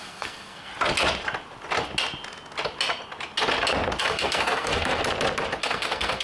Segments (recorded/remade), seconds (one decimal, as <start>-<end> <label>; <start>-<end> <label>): 0.0-0.7 remade; 0.7-4.0 recorded; 4.0-5.0 remade; 5.0-5.6 recorded; 5.6-6.2 remade